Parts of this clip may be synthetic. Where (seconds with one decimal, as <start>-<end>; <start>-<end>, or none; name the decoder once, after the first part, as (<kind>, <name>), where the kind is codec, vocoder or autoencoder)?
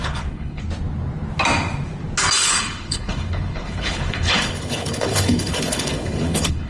0.0-0.6 (codec, HILCodec); 2.4-6.7